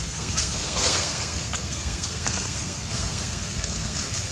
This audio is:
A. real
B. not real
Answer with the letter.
B